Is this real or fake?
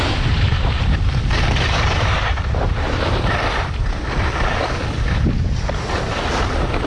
fake